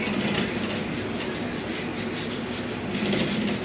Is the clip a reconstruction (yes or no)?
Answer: no